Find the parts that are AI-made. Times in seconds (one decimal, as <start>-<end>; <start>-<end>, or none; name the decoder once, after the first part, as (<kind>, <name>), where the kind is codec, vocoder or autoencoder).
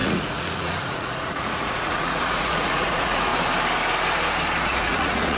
0.0-3.3 (vocoder, Vocos); 4.6-5.4